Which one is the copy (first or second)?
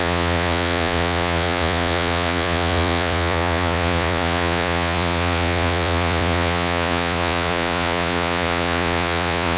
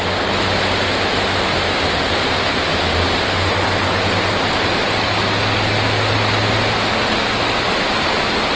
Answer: first